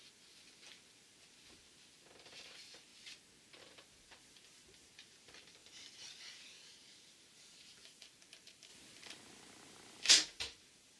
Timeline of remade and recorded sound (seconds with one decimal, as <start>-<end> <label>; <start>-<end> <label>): 0.0-2.9 remade; 2.9-3.6 recorded; 3.6-8.7 remade; 8.7-10.1 recorded; 10.1-11.0 remade